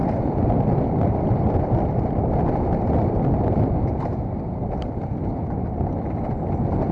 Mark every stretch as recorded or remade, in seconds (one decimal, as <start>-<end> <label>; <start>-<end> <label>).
0.0-5.4 remade; 5.4-5.9 recorded; 5.9-6.9 remade